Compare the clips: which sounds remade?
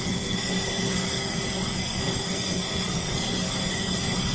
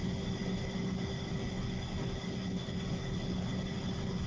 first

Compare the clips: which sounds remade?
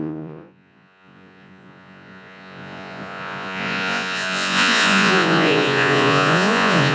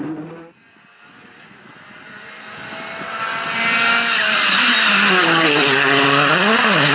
first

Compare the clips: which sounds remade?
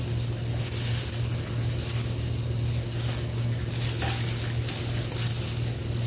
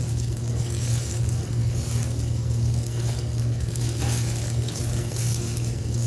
second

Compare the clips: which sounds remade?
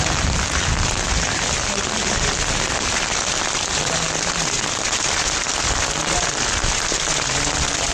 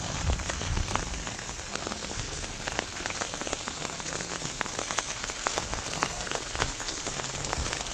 second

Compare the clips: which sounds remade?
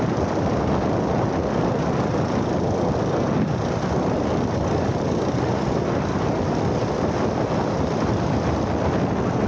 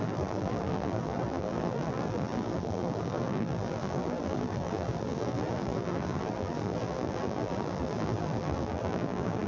second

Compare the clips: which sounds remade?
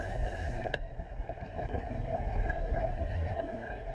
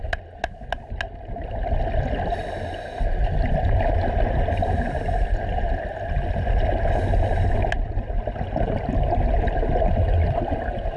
first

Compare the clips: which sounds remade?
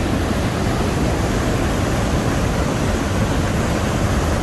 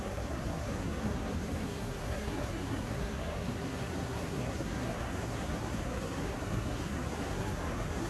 second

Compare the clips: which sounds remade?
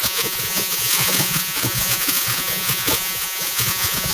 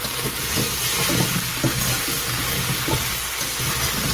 first